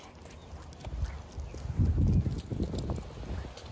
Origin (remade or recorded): recorded